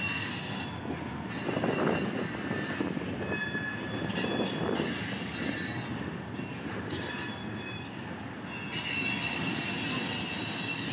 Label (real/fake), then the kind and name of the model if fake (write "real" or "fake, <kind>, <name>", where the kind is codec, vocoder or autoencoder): real